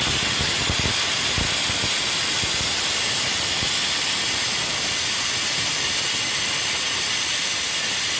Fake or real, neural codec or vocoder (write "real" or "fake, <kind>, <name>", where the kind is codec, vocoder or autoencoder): real